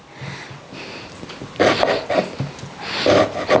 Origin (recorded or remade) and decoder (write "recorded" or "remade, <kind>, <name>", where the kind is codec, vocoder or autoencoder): recorded